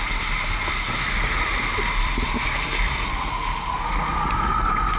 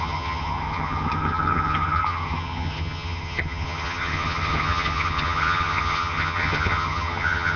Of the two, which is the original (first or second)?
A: first